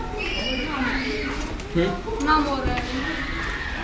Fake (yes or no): no